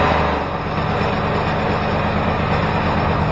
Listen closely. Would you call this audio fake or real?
real